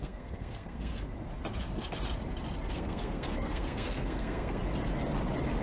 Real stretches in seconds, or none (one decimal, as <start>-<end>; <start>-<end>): 0.9-2.7; 4.6-5.6